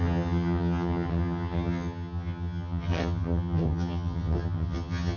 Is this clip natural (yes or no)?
no